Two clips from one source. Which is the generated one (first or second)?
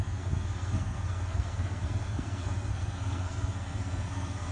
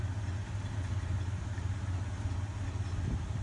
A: first